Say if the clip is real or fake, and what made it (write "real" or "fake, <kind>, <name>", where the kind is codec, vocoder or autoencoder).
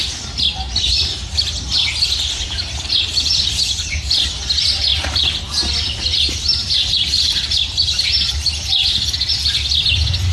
real